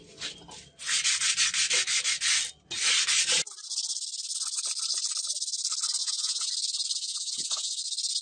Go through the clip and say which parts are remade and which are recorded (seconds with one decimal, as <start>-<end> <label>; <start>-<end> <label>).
0.0-6.0 recorded; 6.0-6.5 remade; 6.5-7.0 recorded; 7.0-7.7 remade; 7.7-8.2 recorded